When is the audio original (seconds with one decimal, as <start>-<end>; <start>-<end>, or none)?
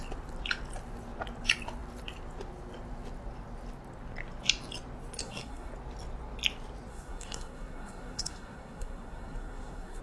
0.0-5.2; 5.7-6.9